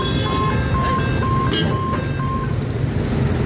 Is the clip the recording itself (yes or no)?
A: yes